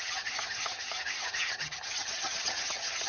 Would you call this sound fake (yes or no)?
yes